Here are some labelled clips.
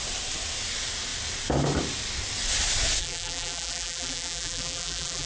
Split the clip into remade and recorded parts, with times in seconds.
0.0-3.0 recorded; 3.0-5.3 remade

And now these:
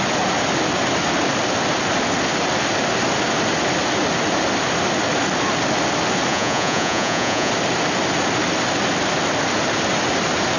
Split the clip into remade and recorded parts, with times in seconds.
0.0-6.3 recorded; 6.3-7.5 remade; 7.5-10.6 recorded

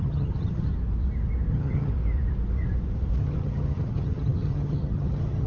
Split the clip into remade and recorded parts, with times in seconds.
0.0-0.7 remade; 0.7-1.5 recorded; 1.5-1.9 remade; 1.9-3.2 recorded; 3.2-5.5 remade

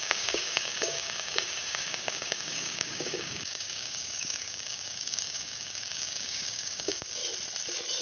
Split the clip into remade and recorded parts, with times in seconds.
0.0-7.2 remade; 7.2-8.0 recorded

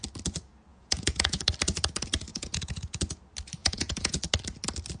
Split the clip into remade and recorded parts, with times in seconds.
0.0-0.7 recorded; 0.7-1.4 remade; 1.4-2.3 recorded; 2.3-3.0 remade; 3.0-3.6 recorded; 3.6-4.2 remade; 4.2-5.0 recorded

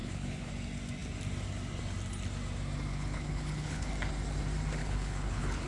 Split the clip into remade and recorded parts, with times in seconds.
0.0-0.5 remade; 0.5-2.9 recorded; 2.9-3.9 remade; 3.9-4.8 recorded; 4.8-5.7 remade

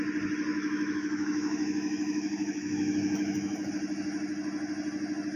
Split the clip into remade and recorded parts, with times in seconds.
0.0-0.5 recorded; 0.5-3.7 remade; 3.7-5.4 recorded

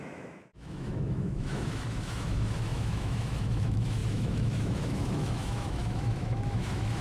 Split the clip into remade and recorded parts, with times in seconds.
0.0-7.0 remade